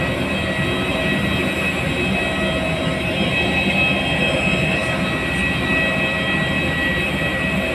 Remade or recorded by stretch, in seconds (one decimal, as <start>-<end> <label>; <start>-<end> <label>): 0.0-7.7 recorded